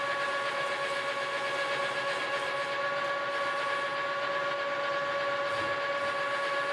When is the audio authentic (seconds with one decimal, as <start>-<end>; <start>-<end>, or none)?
0.0-6.7